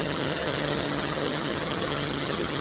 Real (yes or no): no